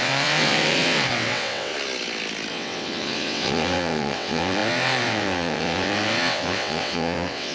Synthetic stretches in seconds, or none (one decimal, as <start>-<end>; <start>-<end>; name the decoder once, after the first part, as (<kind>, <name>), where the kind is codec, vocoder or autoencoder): 0.0-1.7 (vocoder, WaveNeXt); 2.5-7.5